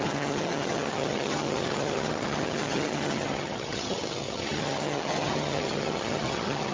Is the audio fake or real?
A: fake